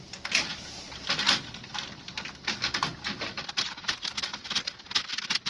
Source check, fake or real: real